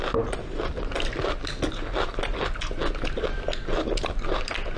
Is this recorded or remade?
recorded